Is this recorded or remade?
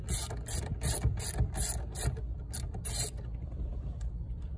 recorded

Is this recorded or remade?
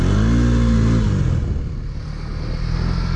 recorded